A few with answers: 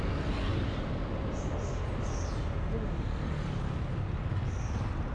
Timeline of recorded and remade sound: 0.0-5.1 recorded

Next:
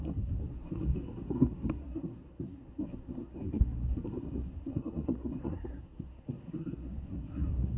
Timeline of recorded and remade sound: 0.0-7.8 remade

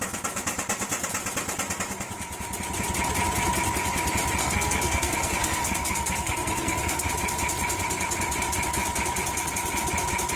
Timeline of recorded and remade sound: 0.0-4.4 recorded; 4.4-7.1 remade; 7.1-10.4 recorded

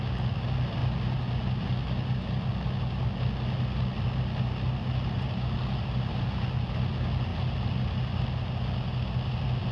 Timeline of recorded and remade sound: 0.0-9.7 recorded

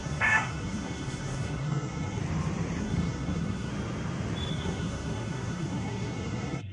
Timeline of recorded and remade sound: 0.0-2.2 remade; 2.2-2.8 recorded; 2.8-3.7 remade; 3.7-4.5 recorded; 4.5-6.7 remade